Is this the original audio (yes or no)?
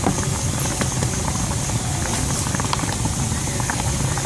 yes